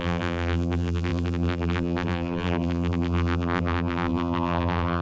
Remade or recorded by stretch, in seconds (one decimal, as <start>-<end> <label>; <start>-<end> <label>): 0.0-5.0 remade